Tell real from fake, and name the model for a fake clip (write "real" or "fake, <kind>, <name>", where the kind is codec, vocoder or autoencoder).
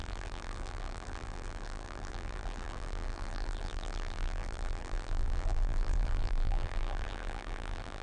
fake, vocoder, BigVGAN v2